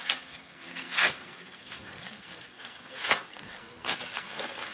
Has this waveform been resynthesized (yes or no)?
yes